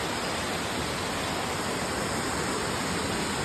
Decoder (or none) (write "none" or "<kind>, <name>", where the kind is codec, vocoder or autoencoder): none